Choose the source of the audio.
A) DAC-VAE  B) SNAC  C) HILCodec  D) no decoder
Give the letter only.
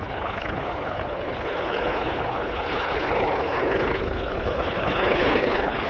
C